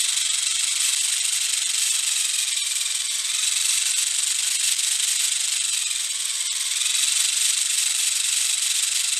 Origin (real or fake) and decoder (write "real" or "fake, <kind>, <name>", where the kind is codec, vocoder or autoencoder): real